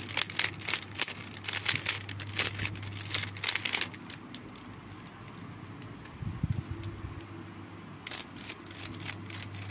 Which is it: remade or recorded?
recorded